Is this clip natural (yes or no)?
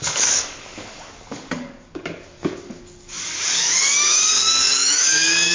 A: no